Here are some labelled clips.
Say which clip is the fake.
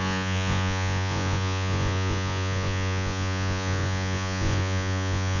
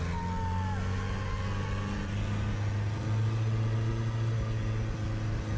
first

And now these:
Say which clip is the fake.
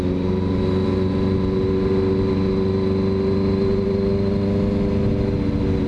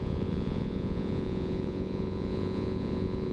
second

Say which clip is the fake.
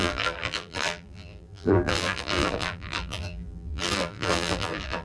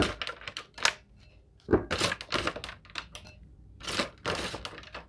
first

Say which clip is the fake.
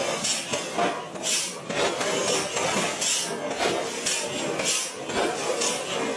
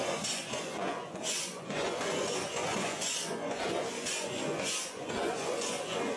second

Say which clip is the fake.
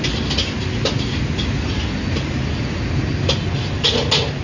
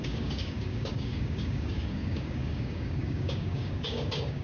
second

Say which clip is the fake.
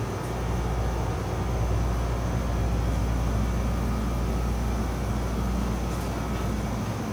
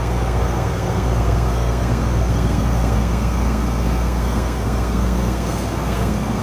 second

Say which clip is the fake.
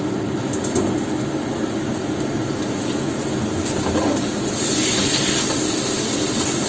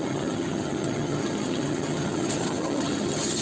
second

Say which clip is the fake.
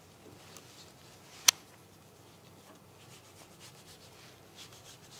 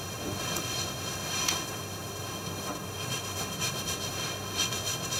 second